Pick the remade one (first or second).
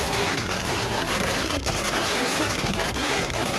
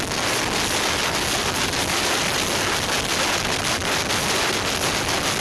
first